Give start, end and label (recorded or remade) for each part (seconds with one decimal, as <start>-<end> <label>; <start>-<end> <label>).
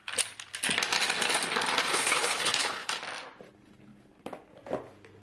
0.0-1.8 recorded; 1.8-2.9 remade; 2.9-5.2 recorded